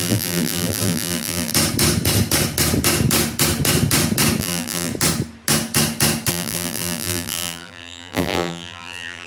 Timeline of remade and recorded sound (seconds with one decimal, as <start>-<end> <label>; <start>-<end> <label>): 0.0-1.5 remade; 1.5-4.4 recorded; 4.4-4.9 remade; 4.9-6.3 recorded; 6.3-9.3 remade